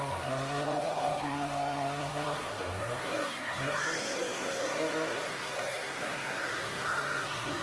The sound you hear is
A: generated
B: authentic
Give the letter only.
A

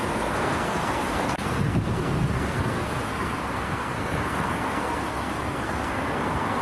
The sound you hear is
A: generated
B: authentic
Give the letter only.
A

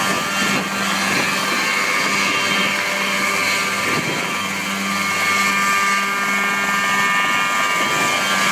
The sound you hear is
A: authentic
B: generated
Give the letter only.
A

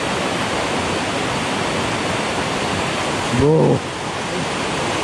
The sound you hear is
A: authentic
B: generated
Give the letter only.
A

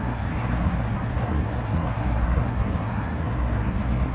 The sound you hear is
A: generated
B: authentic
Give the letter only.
A